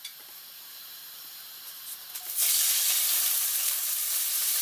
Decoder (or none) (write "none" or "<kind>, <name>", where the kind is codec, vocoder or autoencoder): vocoder, BigVGAN v2